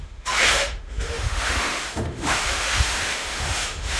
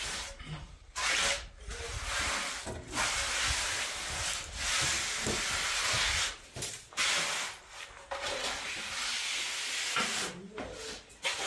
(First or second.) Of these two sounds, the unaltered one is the second